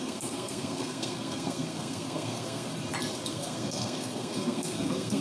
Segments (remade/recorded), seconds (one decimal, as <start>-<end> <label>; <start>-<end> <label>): 0.0-2.7 remade; 2.7-3.3 recorded; 3.3-5.2 remade